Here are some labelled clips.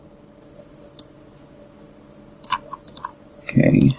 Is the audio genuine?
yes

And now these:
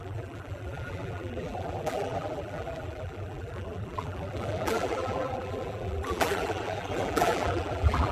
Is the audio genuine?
no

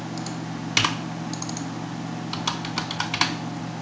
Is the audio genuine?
yes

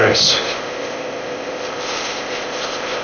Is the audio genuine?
no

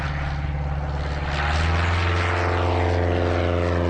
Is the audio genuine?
yes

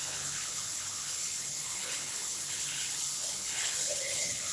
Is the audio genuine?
no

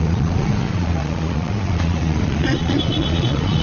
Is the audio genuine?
no